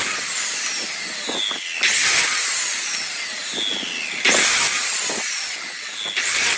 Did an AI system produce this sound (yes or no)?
no